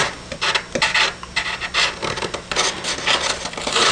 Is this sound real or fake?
real